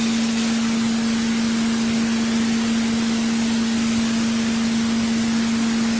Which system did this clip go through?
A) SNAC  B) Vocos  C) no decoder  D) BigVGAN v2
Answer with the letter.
C